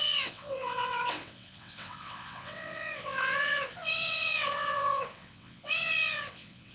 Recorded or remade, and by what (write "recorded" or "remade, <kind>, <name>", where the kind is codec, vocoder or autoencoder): remade, vocoder, WaveNeXt